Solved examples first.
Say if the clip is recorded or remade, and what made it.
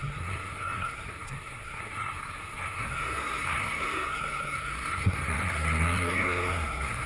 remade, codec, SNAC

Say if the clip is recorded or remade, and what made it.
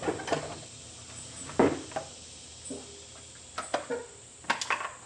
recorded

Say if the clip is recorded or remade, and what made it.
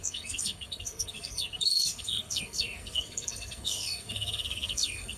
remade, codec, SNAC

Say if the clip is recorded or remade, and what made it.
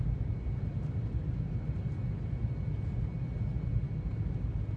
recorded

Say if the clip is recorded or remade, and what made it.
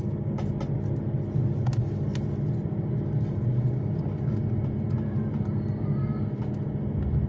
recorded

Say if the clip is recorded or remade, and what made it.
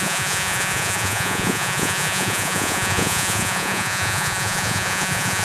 remade, vocoder, Vocos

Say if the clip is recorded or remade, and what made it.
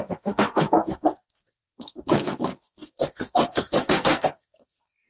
remade, codec, SNAC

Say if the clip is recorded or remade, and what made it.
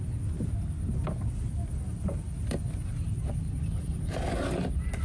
recorded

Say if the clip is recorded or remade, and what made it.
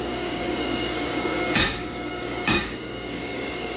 remade, codec, DAC